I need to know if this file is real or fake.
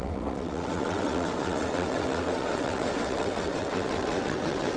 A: fake